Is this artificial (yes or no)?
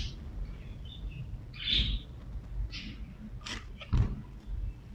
no